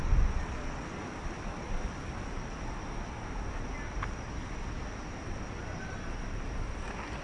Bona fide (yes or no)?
yes